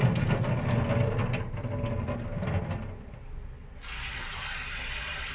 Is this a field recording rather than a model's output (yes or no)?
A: yes